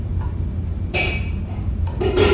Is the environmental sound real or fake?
fake